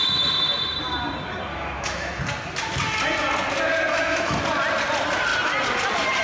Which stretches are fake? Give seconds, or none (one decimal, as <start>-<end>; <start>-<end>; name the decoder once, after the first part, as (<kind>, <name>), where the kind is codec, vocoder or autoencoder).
1.5-2.2 (autoencoder, DAC-VAE); 3.9-4.4